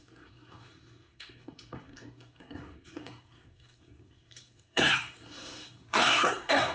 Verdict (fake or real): fake